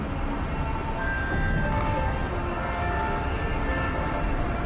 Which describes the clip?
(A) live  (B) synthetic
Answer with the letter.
A